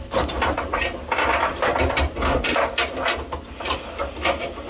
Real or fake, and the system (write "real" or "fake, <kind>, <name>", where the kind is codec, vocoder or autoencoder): real